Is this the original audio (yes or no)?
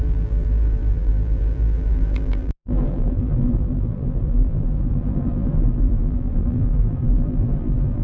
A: no